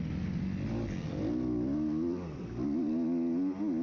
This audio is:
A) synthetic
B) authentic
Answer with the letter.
B